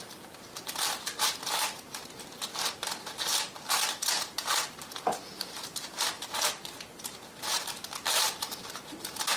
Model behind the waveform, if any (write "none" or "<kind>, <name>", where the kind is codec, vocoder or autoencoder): vocoder, BigVGAN v2